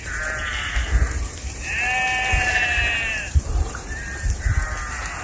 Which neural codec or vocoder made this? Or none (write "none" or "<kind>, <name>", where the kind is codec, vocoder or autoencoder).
vocoder, BigVGAN v2